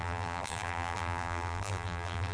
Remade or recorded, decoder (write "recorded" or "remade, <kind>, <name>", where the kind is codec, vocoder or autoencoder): remade, vocoder, BigVGAN v2